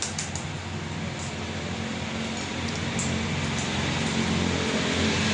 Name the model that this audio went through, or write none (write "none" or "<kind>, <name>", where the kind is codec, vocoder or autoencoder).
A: none